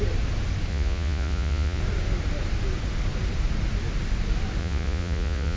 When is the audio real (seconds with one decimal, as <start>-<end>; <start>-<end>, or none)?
0.0-0.7; 1.8-4.6